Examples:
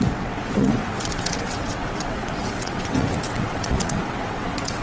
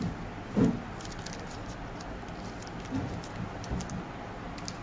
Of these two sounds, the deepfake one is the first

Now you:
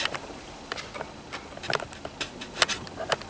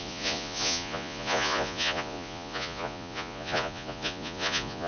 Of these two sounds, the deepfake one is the second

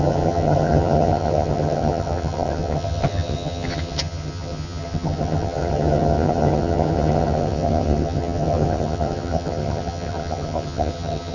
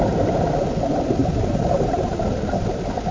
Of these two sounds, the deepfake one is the first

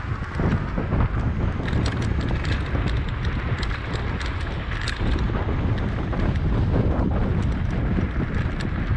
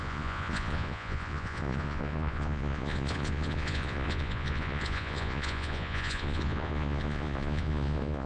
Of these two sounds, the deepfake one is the second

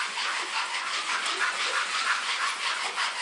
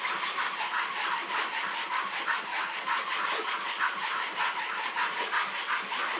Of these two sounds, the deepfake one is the first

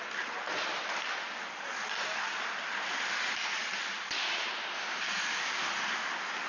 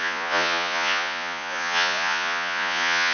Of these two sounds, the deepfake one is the second